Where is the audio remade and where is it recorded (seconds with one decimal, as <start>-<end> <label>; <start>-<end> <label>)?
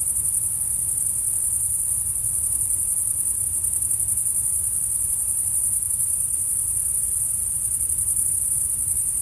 0.0-9.2 recorded